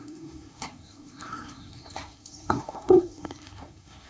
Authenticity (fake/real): fake